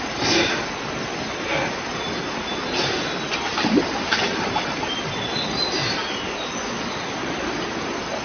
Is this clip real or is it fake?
real